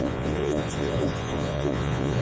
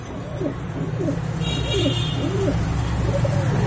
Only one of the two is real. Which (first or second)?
second